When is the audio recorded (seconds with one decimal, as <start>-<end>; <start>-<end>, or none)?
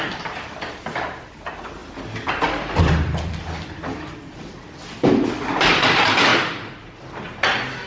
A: 6.3-7.9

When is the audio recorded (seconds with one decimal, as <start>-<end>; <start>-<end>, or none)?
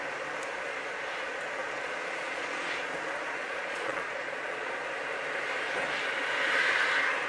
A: 0.0-1.6; 2.9-3.4; 4.7-7.3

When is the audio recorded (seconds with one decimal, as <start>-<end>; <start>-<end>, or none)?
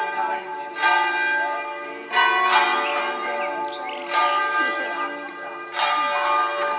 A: 0.0-6.8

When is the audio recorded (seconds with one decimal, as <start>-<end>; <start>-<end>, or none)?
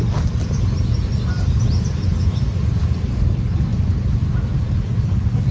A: 0.0-5.5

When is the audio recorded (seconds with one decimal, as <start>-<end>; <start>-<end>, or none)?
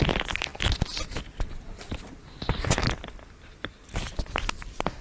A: 0.0-5.0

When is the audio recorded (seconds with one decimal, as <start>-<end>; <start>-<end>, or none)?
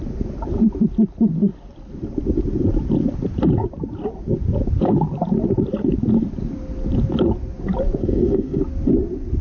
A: 0.0-8.0; 8.6-9.4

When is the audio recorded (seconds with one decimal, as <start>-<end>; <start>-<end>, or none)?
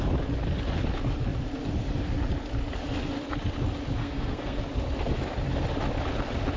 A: 0.0-4.0; 4.6-6.6